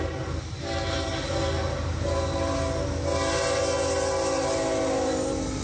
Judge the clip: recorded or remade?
recorded